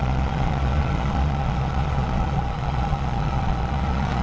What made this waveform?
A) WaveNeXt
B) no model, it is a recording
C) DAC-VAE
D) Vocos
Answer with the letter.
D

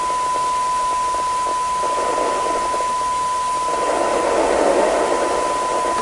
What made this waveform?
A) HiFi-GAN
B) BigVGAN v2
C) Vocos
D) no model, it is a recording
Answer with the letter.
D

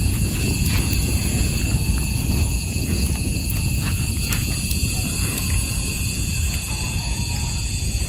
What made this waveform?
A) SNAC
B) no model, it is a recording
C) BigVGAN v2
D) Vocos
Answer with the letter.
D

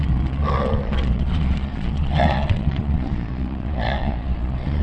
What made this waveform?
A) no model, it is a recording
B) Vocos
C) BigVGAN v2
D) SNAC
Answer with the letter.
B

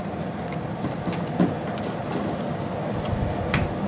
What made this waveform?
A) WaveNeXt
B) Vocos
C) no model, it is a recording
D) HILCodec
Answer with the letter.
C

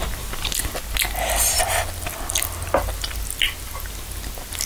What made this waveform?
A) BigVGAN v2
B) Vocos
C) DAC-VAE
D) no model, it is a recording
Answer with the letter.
D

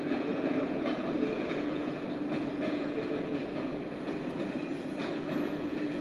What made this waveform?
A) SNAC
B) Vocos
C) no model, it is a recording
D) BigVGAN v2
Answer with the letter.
B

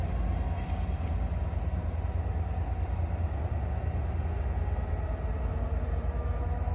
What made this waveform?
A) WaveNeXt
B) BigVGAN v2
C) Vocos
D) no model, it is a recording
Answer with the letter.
D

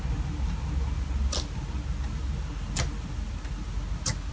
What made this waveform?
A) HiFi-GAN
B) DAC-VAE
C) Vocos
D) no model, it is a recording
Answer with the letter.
D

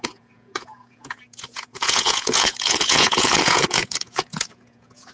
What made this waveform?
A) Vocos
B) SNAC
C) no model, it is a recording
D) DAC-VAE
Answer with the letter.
A